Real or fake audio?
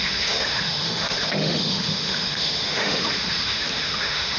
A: fake